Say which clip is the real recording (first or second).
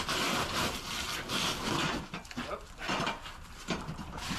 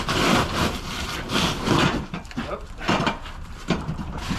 first